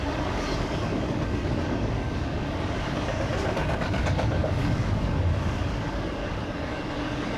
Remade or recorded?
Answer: remade